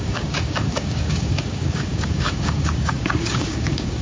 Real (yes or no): no